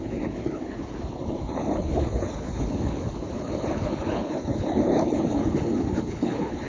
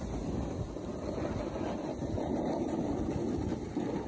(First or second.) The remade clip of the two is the first